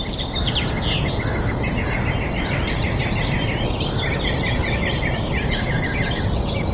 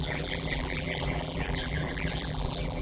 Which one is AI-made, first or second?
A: second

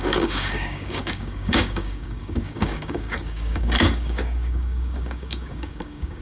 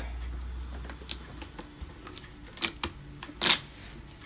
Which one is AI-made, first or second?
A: first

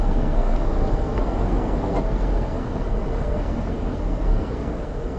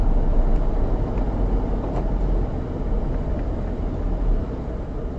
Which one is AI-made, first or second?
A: first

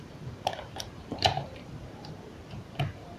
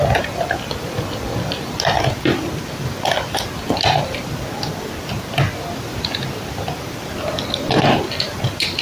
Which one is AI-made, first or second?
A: first